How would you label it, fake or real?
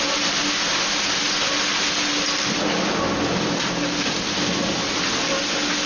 real